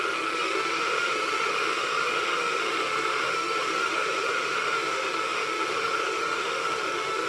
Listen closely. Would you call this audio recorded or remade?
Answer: remade